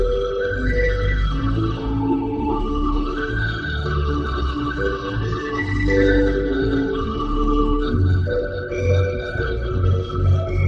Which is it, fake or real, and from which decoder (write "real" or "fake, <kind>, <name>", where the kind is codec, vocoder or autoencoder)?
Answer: fake, codec, HILCodec